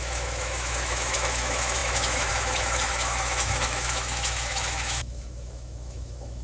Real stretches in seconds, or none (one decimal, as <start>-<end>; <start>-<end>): none